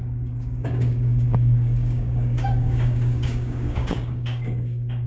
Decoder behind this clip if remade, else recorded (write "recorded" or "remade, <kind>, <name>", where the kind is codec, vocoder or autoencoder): remade, codec, DAC